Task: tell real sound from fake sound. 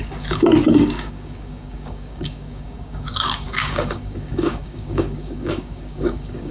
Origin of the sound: fake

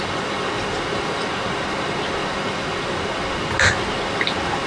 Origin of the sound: real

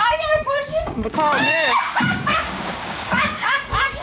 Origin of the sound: fake